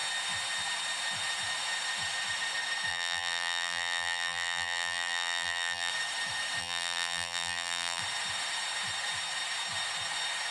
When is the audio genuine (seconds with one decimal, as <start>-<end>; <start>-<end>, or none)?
0.0-2.9; 5.9-6.6; 8.0-10.5